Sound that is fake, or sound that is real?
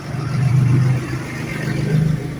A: fake